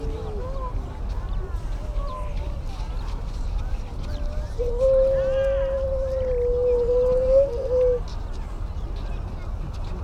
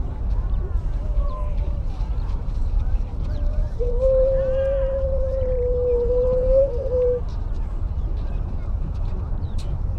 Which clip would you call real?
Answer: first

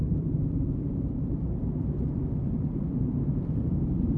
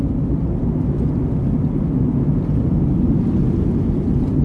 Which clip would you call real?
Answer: second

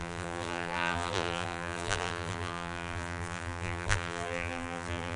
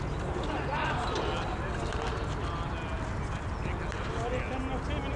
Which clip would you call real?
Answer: second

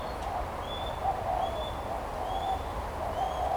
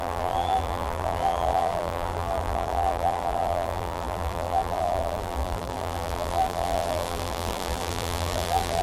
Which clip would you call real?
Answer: first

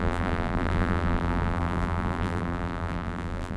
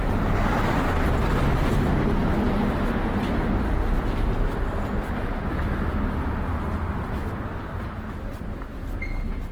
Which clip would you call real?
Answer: second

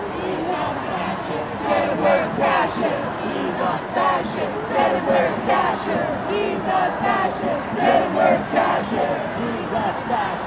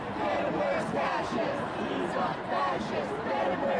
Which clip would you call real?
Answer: first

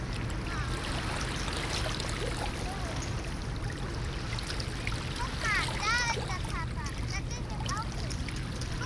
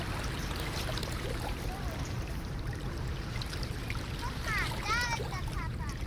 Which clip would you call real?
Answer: first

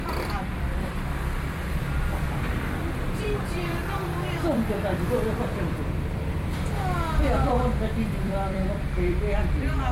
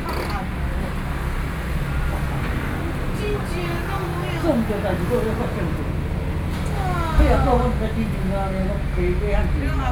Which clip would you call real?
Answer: second